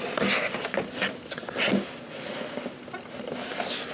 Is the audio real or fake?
real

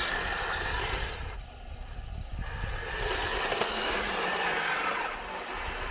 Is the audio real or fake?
real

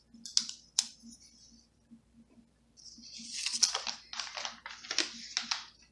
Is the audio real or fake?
real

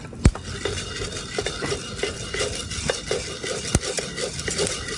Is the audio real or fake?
real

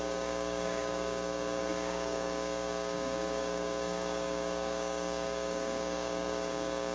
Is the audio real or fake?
fake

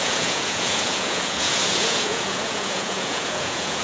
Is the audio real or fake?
fake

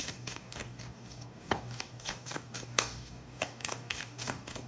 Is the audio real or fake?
fake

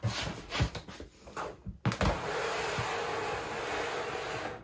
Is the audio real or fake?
real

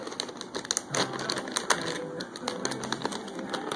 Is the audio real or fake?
real